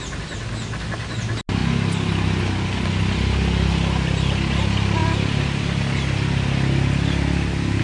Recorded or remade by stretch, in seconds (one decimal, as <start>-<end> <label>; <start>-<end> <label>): 0.0-7.8 recorded

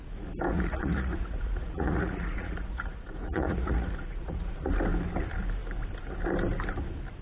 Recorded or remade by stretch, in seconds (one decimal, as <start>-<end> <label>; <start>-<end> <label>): 0.0-0.5 recorded; 0.5-4.7 remade; 4.7-7.2 recorded

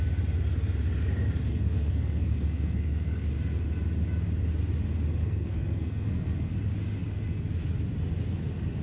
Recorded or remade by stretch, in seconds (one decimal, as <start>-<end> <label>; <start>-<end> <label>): 0.0-1.5 recorded; 1.5-3.3 remade; 3.3-5.2 recorded; 5.2-6.5 remade; 6.5-8.8 recorded

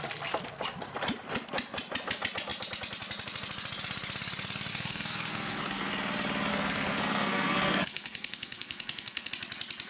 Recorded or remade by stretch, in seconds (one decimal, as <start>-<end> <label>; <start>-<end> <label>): 0.0-4.7 recorded; 4.7-5.9 remade; 5.9-6.5 recorded; 6.5-9.3 remade; 9.3-9.9 recorded

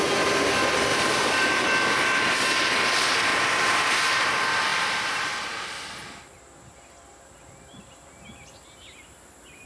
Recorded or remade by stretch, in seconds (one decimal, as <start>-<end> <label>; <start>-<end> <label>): 0.0-0.9 recorded; 0.9-1.6 remade; 1.6-3.3 recorded; 3.3-4.3 remade; 4.3-4.7 recorded; 4.7-5.3 remade; 5.3-9.7 recorded